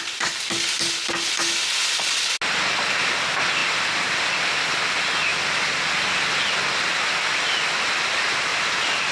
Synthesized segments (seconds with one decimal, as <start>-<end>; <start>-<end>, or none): 5.3-5.8; 8.5-9.1